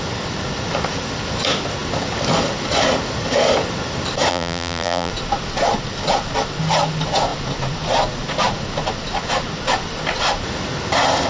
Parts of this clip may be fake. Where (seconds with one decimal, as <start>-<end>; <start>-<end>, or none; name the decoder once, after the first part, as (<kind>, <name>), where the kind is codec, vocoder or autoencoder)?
4.3-5.1 (vocoder, BigVGAN v2)